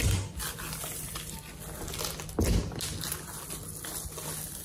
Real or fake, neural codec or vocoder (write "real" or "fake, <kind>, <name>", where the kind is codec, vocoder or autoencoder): real